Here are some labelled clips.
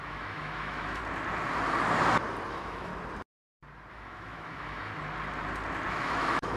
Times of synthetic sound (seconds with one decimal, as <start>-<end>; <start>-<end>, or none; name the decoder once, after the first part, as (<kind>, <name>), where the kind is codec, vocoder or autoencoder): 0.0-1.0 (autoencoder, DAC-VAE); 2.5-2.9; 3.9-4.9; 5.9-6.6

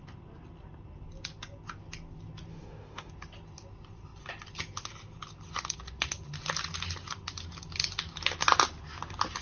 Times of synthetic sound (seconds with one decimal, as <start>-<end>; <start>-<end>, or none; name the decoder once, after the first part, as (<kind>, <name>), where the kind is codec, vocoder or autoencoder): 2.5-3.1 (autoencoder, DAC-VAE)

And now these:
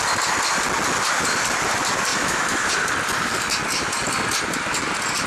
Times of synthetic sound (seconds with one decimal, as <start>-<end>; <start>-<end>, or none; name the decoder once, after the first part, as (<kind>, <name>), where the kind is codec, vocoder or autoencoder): 2.1-2.7 (autoencoder, DAC-VAE)

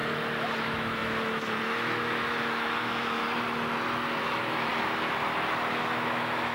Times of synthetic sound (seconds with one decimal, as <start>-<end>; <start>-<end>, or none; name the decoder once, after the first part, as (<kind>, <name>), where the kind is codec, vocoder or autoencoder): 0.6-3.2 (autoencoder, DAC-VAE); 4.2-4.7; 5.8-6.5